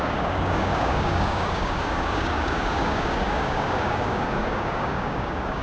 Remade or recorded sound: remade